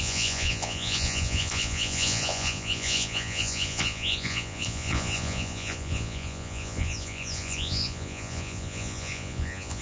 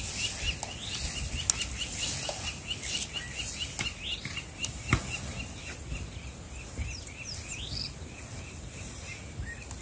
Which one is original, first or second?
second